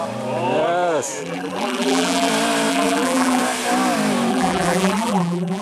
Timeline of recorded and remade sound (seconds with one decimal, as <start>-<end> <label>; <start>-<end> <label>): 0.0-1.2 recorded; 1.2-2.3 remade; 2.3-2.7 recorded; 2.7-3.4 remade; 3.4-4.3 recorded; 4.3-5.6 remade